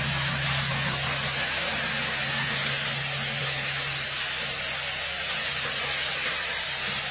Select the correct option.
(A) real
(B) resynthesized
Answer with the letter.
A